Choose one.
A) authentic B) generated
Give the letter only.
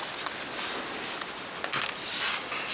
A